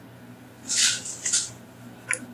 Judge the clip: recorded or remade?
recorded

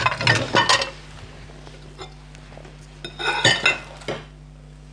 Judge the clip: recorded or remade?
recorded